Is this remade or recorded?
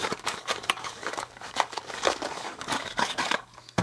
remade